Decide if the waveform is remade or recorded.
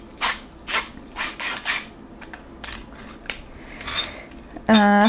recorded